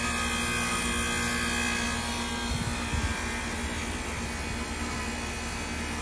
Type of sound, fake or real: real